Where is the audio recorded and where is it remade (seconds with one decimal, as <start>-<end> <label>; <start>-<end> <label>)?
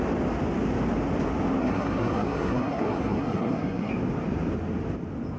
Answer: 0.0-1.6 recorded; 1.6-3.9 remade; 3.9-5.4 recorded